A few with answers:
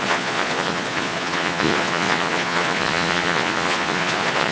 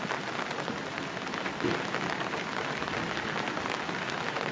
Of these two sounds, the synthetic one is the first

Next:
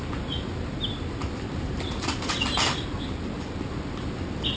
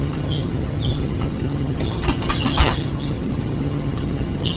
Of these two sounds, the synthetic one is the second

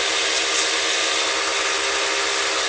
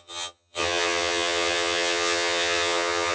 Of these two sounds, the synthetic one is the second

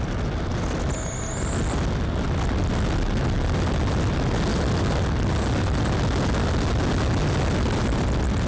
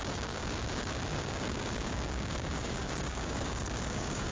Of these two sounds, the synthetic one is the second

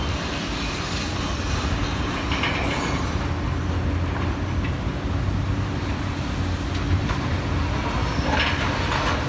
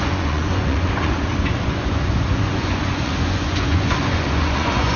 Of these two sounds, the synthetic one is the second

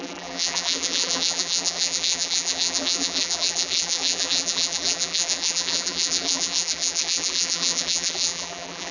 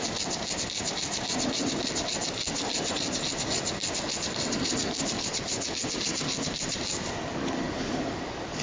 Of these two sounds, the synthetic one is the first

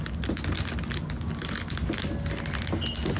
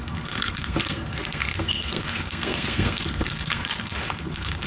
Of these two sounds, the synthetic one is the second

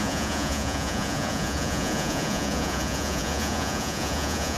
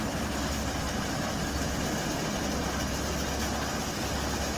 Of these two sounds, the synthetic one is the first